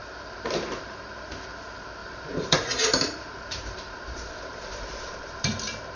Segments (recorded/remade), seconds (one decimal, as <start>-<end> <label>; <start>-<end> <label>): 0.0-1.0 remade; 1.0-2.0 recorded; 2.0-5.6 remade; 5.6-6.0 recorded